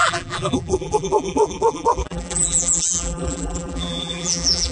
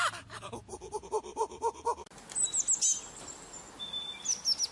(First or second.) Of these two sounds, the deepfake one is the first